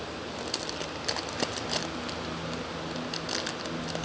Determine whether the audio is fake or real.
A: real